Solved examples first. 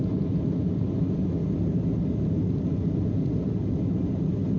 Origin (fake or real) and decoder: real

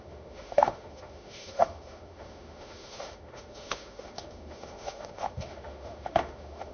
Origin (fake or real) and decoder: fake, autoencoder, DAC-VAE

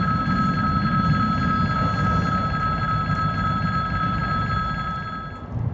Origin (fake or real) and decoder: real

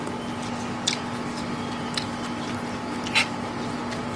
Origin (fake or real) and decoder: real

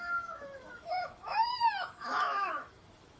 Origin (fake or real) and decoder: fake, autoencoder, DAC-VAE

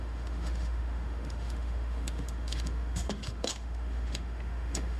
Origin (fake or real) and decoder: fake, autoencoder, DAC-VAE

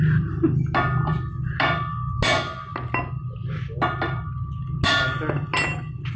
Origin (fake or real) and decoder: real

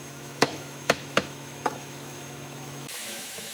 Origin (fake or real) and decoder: fake, autoencoder, DAC-VAE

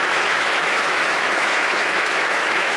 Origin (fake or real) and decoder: fake, autoencoder, DAC-VAE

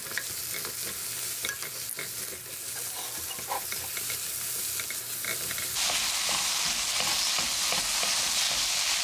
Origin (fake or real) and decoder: real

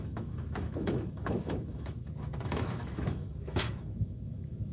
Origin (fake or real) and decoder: fake, autoencoder, DAC-VAE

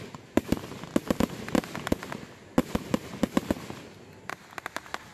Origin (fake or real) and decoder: real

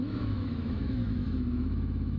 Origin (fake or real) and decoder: fake, autoencoder, DAC-VAE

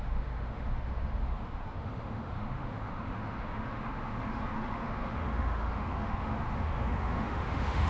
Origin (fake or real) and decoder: fake, autoencoder, DAC-VAE